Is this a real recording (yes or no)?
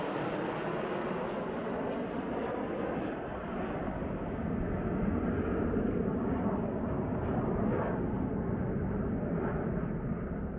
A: yes